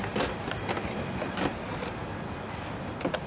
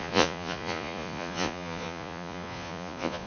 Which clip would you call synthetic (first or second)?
second